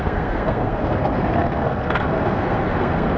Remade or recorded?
remade